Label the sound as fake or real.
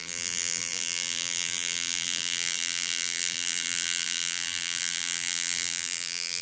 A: fake